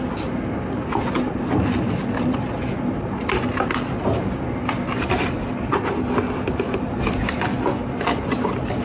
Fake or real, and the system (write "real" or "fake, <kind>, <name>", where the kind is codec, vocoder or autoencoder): real